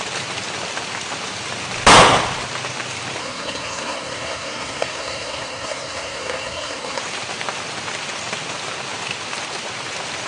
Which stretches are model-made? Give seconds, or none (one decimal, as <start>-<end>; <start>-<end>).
3.2-7.0